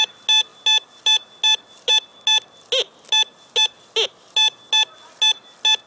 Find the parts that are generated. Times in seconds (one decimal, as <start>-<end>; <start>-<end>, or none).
none